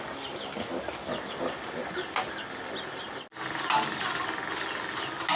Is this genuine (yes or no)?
yes